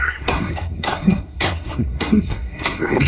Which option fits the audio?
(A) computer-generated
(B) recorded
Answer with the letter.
A